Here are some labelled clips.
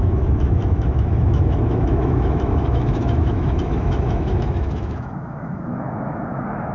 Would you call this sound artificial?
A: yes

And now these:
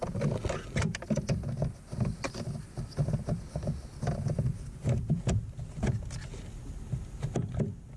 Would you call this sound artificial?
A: no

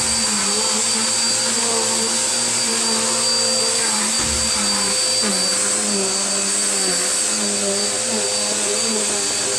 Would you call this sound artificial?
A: no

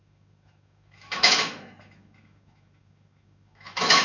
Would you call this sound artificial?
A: yes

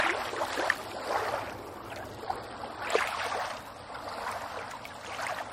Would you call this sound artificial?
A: no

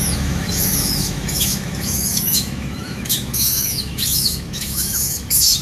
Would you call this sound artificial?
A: yes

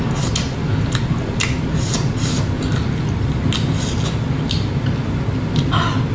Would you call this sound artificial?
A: no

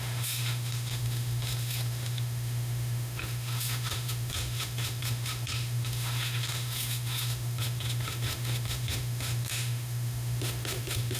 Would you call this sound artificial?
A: yes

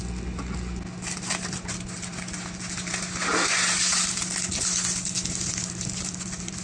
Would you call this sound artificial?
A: no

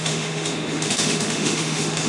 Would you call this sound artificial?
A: yes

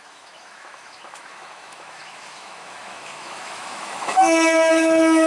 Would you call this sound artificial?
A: yes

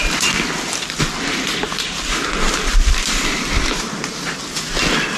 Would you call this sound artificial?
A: no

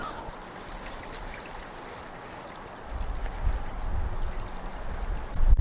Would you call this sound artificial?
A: no